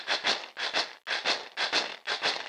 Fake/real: real